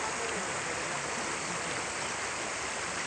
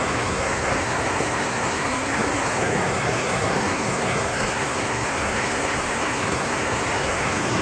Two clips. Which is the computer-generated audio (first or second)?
second